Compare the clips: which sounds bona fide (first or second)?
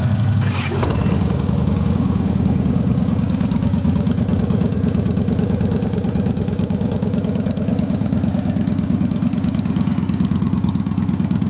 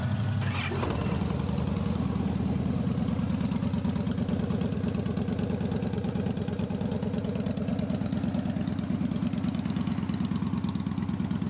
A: second